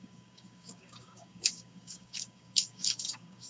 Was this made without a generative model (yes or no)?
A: no